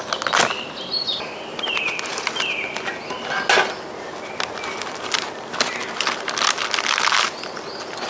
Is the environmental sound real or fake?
real